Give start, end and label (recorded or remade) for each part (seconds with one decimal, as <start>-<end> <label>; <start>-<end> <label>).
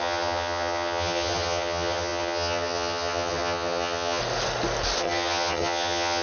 0.0-4.2 remade; 4.2-5.0 recorded; 5.0-6.2 remade